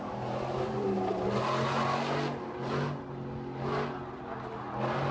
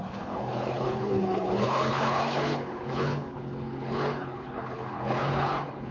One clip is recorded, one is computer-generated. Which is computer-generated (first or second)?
second